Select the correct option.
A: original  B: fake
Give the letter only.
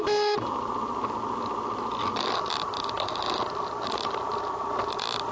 A